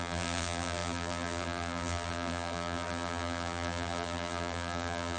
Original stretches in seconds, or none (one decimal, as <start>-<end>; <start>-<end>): none